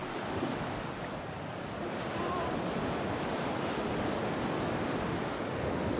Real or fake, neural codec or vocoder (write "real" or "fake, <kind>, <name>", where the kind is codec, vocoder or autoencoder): real